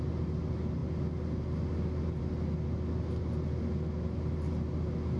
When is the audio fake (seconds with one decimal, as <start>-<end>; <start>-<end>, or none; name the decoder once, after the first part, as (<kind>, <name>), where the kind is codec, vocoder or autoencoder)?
none